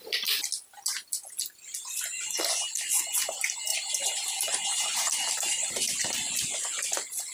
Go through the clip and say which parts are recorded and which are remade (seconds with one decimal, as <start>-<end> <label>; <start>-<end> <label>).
0.0-3.7 recorded; 3.7-5.7 remade; 5.7-7.3 recorded